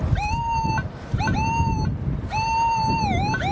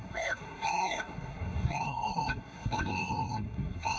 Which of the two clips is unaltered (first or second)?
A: first